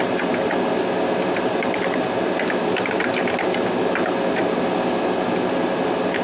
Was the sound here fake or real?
real